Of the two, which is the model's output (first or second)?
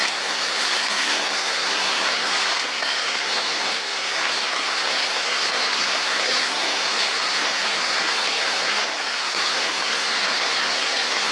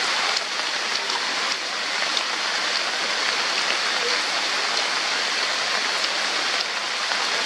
first